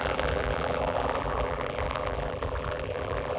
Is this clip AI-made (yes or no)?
yes